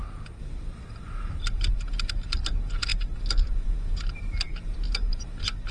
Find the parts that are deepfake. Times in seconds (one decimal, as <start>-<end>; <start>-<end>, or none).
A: none